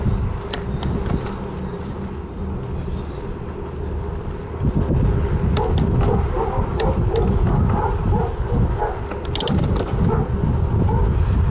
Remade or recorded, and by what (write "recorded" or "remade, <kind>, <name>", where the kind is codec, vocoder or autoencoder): recorded